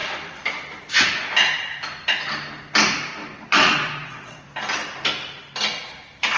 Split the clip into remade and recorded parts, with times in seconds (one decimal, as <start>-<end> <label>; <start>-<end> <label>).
0.0-3.2 recorded; 3.2-4.4 remade; 4.4-6.4 recorded